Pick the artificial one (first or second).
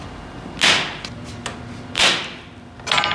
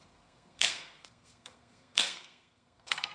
second